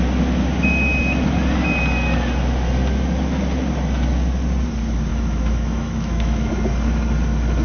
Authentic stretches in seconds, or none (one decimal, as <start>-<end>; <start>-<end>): 0.0-5.1; 6.5-7.6